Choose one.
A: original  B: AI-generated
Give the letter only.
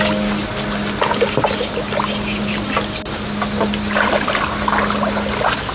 A